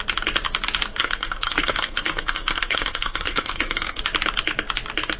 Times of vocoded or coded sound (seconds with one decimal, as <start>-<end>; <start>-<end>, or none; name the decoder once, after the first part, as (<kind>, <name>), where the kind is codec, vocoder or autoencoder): 1.0-4.0 (codec, SNAC)